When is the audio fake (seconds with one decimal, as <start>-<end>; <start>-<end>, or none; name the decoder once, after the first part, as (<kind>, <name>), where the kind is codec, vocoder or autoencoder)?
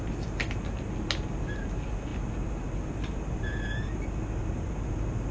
none